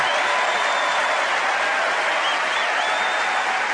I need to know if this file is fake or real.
real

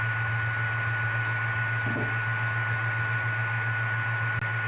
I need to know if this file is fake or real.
real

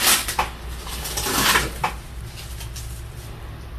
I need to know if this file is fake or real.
real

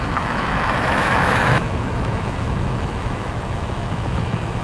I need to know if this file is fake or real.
fake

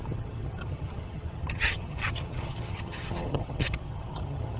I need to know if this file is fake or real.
fake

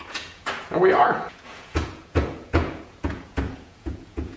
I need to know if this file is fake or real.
fake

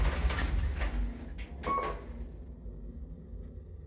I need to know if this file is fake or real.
real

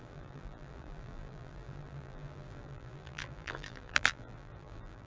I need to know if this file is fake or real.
fake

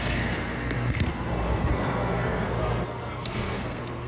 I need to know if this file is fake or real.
fake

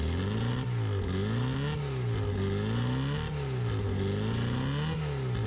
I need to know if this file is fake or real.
real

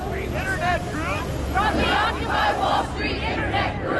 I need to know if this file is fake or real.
real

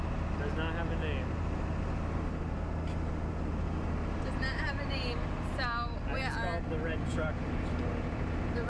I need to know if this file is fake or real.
real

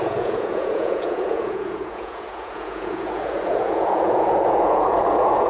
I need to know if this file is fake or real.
fake